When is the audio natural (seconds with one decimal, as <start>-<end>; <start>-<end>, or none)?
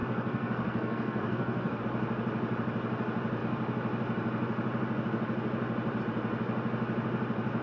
1.8-7.6